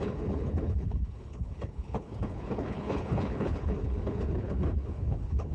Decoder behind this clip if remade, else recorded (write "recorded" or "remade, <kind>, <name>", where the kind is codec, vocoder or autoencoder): remade, codec, HILCodec